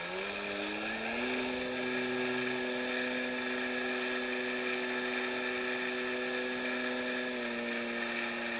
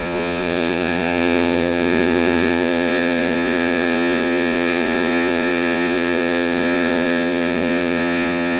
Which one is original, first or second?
first